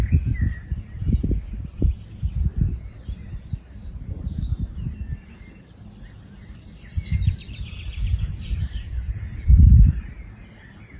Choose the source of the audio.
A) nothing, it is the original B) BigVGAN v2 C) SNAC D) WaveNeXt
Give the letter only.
B